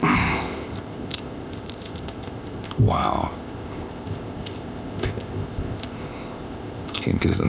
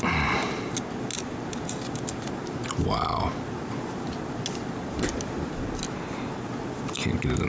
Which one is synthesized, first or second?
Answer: first